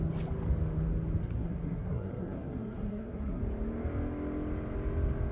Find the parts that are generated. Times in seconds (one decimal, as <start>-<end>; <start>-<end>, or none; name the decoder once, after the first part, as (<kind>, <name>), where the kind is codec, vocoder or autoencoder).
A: 1.2-3.4 (codec, SNAC)